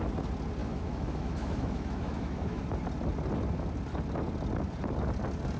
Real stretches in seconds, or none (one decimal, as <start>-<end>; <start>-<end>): 0.0-0.6; 2.6-5.6